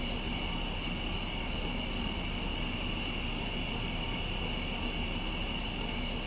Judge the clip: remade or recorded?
recorded